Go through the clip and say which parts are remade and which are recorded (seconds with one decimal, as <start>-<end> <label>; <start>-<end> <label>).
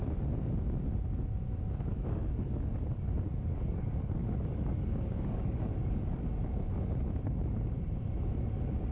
0.0-1.9 recorded; 1.9-6.2 remade; 6.2-8.9 recorded